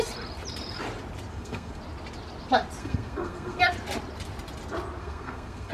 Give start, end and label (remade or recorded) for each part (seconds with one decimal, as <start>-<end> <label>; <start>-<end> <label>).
0.0-1.3 recorded; 1.3-1.8 remade; 1.8-2.8 recorded; 2.8-3.6 remade; 3.6-5.0 recorded; 5.0-5.7 remade